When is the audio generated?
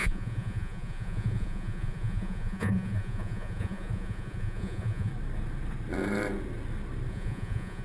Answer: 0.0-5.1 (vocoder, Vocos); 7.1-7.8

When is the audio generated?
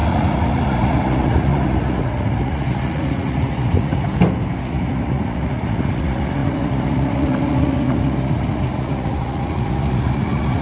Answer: 0.0-4.1 (vocoder, Vocos); 4.6-10.6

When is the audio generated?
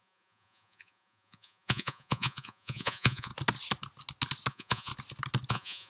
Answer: 0.0-3.3 (vocoder, Vocos); 4.5-4.9; 5.5-5.9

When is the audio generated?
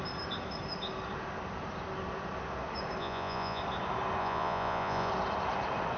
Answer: 3.0-3.6 (vocoder, Vocos); 4.2-5.1